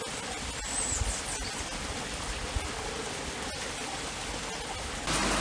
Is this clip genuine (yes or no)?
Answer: yes